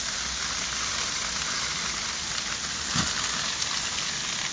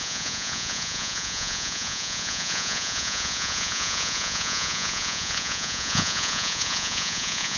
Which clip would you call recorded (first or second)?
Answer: first